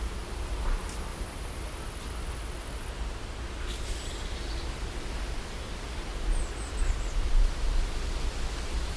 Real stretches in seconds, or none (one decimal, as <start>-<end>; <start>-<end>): 0.0-9.0